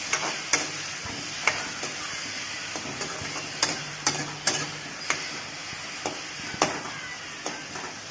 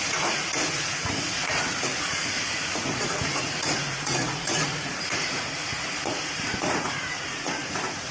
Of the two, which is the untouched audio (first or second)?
first